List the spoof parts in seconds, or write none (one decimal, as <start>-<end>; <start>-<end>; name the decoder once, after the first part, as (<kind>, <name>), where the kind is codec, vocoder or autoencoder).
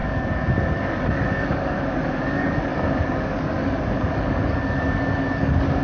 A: 0.0-5.8 (codec, DAC)